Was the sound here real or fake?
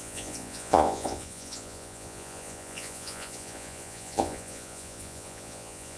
fake